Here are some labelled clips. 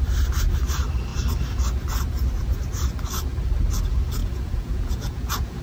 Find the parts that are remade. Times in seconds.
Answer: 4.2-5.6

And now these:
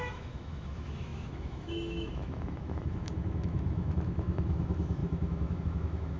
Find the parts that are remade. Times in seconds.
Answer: 0.0-6.2

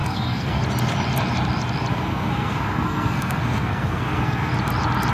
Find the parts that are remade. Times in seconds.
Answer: 0.0-0.6; 1.9-4.5

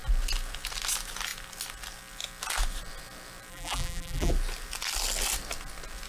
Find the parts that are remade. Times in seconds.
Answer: 3.5-4.3

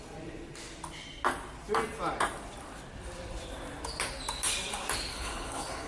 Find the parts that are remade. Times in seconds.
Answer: 5.1-5.9